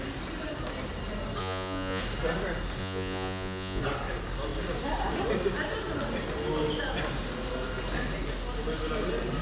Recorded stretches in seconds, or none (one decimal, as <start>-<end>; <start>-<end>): 0.0-1.4; 2.0-2.8; 3.8-9.4